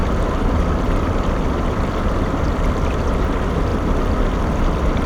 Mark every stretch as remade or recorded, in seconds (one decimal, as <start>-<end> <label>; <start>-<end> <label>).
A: 0.0-5.1 recorded

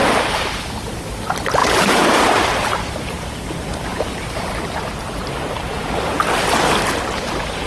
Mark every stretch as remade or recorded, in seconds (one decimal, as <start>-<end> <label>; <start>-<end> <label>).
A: 0.0-0.7 remade; 0.7-1.6 recorded; 1.6-6.2 remade; 6.2-7.7 recorded

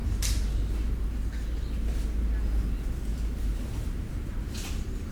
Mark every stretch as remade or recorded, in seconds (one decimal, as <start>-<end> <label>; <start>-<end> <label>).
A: 0.0-3.1 recorded; 3.1-4.1 remade; 4.1-5.1 recorded

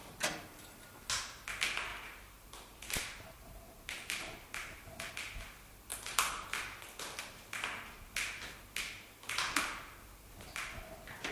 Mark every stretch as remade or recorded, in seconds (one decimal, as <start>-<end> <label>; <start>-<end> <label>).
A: 0.0-1.1 remade; 1.1-1.9 recorded; 1.9-5.1 remade; 5.1-5.9 recorded; 5.9-6.5 remade; 6.5-11.3 recorded

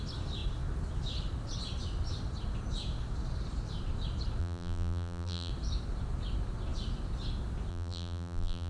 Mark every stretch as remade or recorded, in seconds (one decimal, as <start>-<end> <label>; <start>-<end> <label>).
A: 0.0-4.4 recorded; 4.4-5.5 remade; 5.5-7.7 recorded; 7.7-8.7 remade

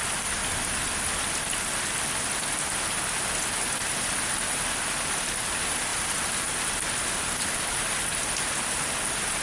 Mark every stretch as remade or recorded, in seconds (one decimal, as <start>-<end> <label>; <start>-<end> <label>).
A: 0.0-5.9 recorded; 5.9-6.8 remade; 6.8-9.4 recorded

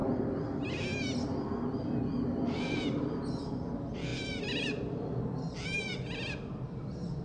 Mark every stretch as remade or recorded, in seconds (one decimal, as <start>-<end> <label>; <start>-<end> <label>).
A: 0.0-4.1 recorded; 4.1-5.2 remade; 5.2-7.2 recorded

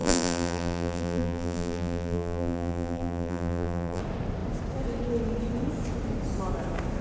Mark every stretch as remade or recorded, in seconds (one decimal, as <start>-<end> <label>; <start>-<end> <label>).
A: 0.0-4.0 remade; 4.0-7.0 recorded